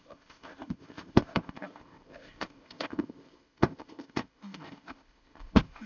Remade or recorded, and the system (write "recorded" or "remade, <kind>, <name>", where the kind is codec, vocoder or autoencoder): remade, codec, ZipCodec